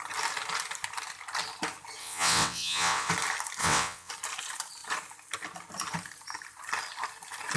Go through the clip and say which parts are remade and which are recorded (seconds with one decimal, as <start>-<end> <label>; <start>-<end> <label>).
0.0-2.0 recorded; 2.0-3.1 remade; 3.1-3.6 recorded; 3.6-4.1 remade; 4.1-7.6 recorded